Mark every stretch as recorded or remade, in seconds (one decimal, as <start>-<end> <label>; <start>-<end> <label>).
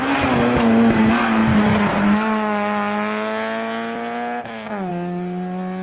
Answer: 0.0-5.8 recorded